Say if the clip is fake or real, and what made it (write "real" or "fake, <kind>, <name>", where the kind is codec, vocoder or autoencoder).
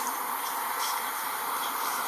real